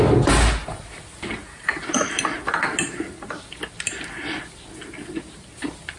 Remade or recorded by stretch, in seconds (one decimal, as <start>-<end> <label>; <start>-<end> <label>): 0.0-6.0 recorded